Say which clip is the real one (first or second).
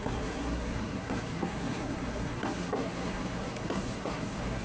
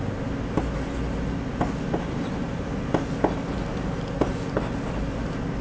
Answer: second